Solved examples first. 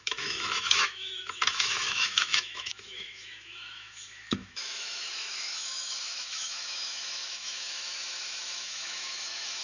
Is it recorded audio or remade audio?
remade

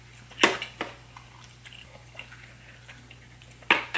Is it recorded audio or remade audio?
recorded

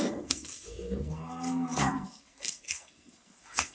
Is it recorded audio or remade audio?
remade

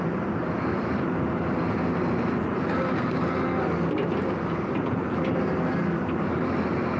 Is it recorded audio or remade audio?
recorded